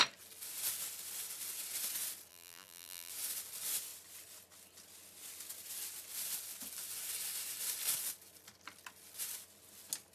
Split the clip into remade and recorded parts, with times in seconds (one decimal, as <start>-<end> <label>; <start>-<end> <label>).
0.0-2.3 recorded; 2.3-3.1 remade; 3.1-10.1 recorded